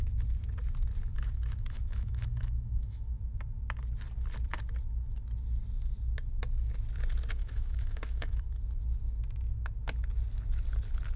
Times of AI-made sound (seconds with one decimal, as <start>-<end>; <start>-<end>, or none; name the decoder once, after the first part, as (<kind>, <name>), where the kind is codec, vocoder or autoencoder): 1.1-3.2 (autoencoder, DAC-VAE); 7.4-8.6